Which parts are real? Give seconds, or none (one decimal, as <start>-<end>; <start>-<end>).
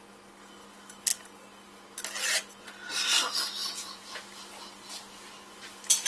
0.0-3.6; 4.2-6.1